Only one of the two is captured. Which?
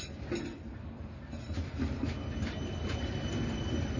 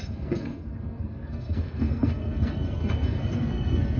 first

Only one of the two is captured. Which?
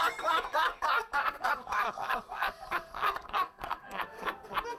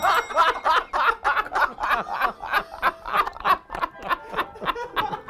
second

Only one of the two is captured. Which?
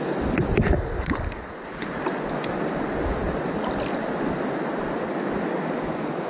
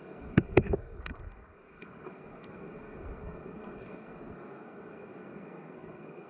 first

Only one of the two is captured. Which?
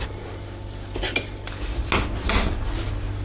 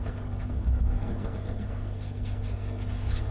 first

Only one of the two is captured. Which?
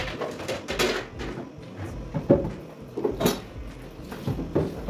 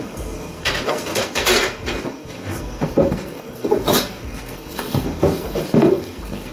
first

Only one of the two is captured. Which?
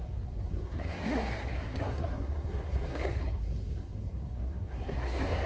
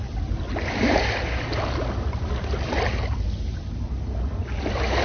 second